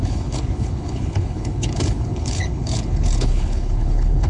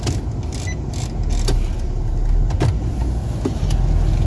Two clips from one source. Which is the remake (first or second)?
first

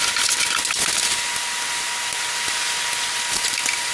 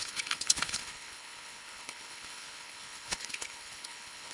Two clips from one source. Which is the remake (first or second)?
second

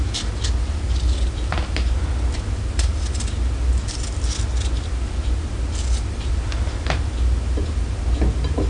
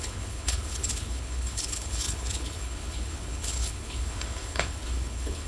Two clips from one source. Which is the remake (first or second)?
second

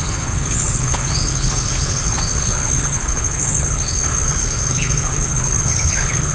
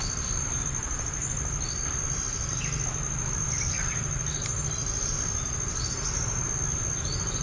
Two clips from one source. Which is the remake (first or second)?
first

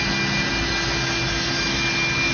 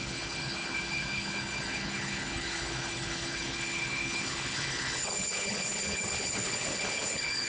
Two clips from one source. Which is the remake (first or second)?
second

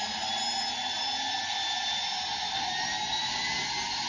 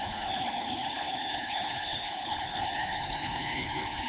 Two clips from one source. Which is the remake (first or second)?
second